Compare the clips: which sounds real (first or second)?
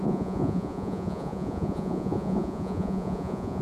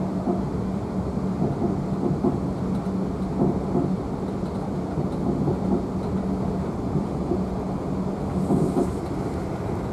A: second